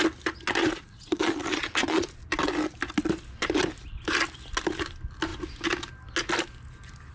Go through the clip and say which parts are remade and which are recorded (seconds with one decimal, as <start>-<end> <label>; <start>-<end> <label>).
0.0-0.6 recorded; 0.6-2.1 remade; 2.1-7.1 recorded